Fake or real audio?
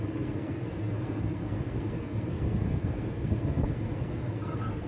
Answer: fake